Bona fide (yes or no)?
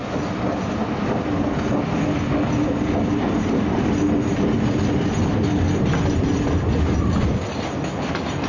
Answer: yes